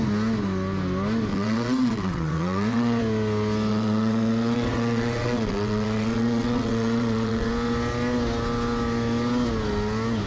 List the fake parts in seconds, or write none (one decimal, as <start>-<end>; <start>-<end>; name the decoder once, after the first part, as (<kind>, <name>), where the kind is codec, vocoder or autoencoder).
1.3-3.0 (vocoder, WaveNeXt); 3.7-7.5